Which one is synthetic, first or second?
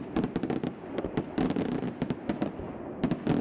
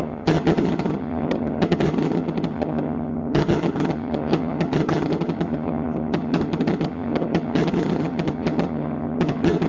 second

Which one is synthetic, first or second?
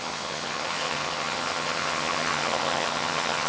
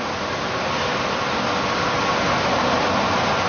first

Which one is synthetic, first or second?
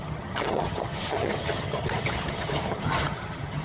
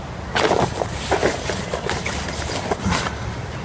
first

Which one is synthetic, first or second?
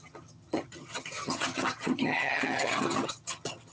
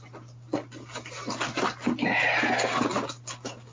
first